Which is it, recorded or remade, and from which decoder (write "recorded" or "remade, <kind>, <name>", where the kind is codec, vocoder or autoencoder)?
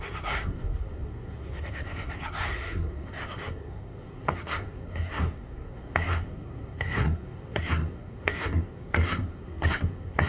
remade, codec, SNAC